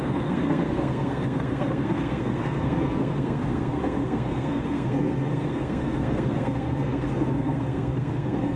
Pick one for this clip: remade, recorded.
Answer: remade